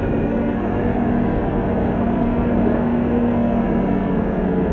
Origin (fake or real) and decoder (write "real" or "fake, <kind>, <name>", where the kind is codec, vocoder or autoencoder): fake, codec, SNAC